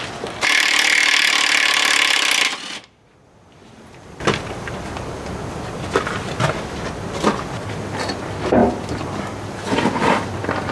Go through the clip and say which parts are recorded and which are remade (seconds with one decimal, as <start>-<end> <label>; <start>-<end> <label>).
0.0-10.7 recorded